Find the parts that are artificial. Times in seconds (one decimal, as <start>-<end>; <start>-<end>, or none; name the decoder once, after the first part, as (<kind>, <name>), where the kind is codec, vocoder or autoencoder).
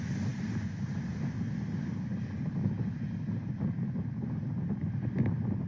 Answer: none